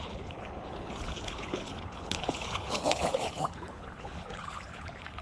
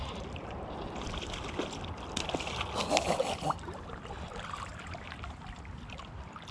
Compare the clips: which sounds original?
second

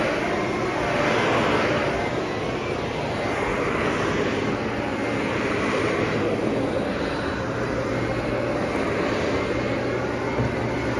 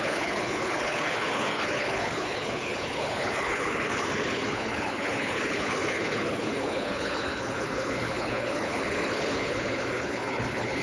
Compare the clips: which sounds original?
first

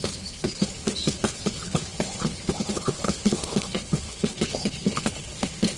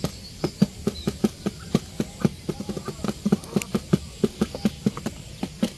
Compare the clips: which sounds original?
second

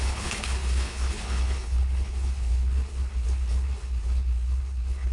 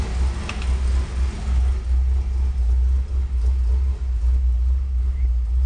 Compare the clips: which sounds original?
second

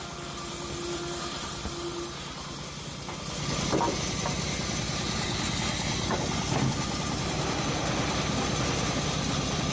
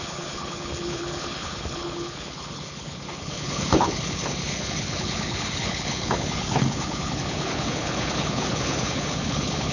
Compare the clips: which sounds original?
first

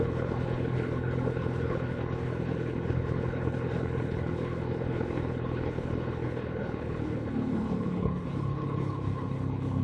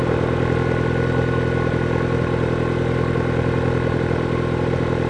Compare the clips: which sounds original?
second